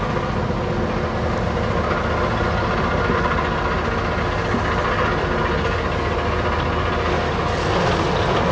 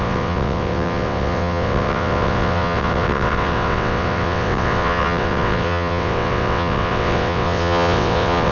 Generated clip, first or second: second